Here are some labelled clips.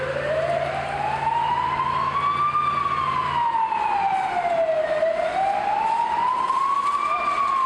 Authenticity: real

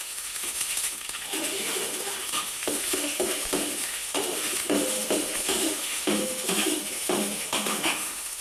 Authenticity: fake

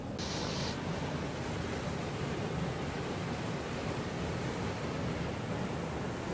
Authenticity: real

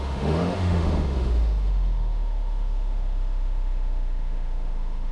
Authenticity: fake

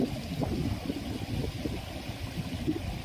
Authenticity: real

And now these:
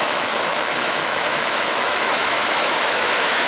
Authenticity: fake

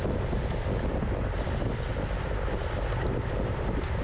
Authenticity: real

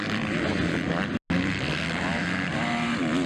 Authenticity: real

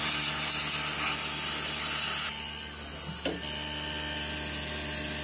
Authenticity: real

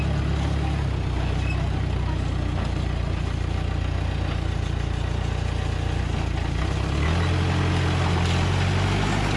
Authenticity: real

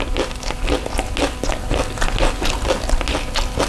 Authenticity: real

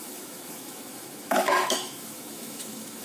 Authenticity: fake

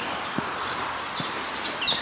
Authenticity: real